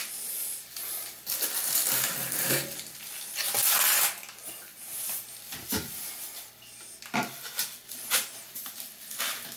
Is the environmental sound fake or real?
real